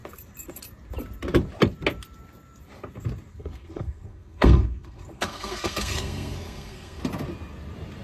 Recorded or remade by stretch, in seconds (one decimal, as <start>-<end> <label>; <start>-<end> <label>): 0.0-3.3 recorded; 3.3-7.0 remade; 7.0-8.0 recorded